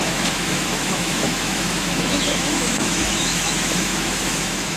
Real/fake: fake